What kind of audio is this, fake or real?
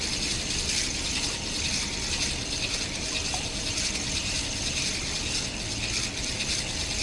real